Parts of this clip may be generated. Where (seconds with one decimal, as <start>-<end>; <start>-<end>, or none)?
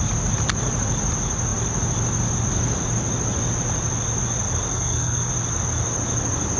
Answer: 4.7-5.3